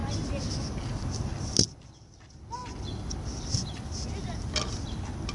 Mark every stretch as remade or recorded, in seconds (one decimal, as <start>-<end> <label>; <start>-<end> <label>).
0.0-5.3 recorded